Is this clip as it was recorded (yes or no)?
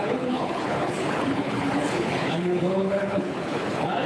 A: no